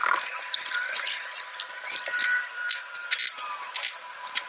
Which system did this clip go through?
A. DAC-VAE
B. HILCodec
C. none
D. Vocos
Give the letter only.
C